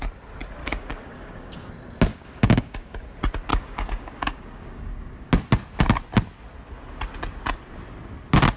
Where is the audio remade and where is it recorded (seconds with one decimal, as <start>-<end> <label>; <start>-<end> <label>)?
0.0-0.6 recorded; 0.6-1.7 remade; 1.7-2.1 recorded; 2.1-3.0 remade; 3.0-3.5 recorded; 3.5-5.3 remade; 5.3-8.6 recorded